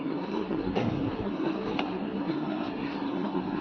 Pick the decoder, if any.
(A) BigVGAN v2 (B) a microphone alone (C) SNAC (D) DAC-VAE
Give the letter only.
C